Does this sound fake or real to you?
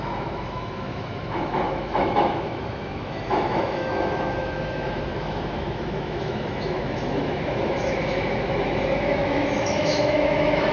fake